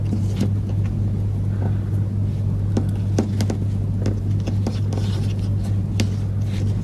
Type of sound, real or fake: real